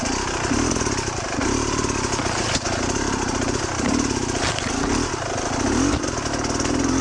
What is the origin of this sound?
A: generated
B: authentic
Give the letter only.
B